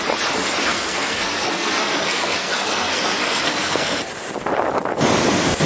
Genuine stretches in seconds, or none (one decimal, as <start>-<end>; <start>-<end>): 0.0-0.7; 4.1-5.7